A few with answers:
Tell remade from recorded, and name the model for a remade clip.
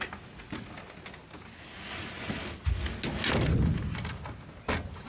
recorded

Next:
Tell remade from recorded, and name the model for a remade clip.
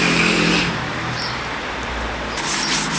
remade, vocoder, BigVGAN v2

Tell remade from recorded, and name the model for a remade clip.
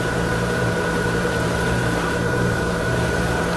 remade, vocoder, BigVGAN v2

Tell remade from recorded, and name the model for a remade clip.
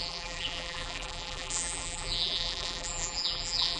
remade, vocoder, BigVGAN v2